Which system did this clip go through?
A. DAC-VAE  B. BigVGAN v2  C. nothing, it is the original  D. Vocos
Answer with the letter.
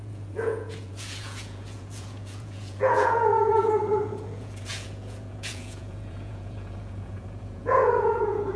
D